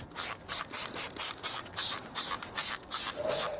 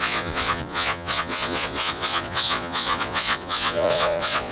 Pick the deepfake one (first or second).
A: second